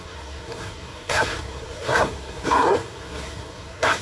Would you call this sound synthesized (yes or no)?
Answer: yes